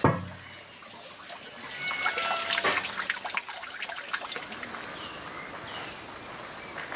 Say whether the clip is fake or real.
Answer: real